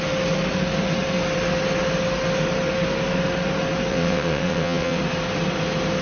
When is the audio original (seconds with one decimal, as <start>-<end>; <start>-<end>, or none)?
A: 0.0-3.9; 5.0-6.0